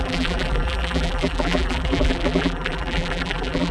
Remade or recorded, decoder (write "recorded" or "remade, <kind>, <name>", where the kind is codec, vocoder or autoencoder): remade, vocoder, BigVGAN v2